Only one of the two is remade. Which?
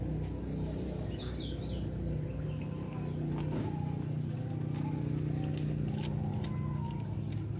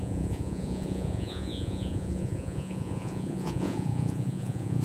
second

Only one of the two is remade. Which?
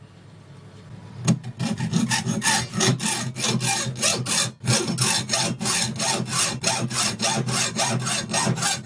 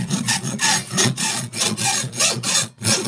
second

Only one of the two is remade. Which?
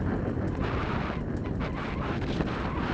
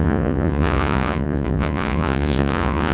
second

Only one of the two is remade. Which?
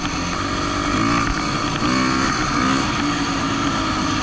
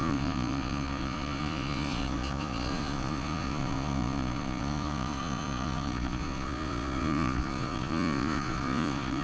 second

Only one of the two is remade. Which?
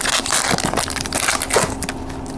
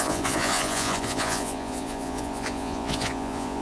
second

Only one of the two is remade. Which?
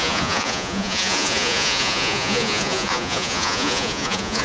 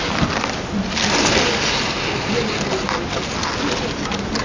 first